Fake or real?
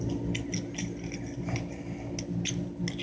real